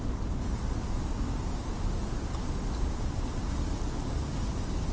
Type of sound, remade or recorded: recorded